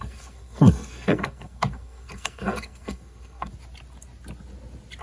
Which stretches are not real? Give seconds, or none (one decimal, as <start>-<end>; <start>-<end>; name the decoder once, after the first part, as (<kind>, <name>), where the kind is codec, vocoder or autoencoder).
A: 0.0-3.5 (codec, SNAC)